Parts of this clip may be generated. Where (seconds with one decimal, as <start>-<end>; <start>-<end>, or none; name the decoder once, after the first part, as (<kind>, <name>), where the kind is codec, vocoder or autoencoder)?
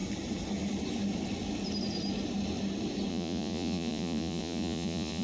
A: 3.1-5.2 (vocoder, Vocos)